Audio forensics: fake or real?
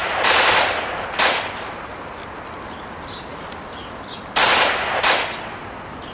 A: real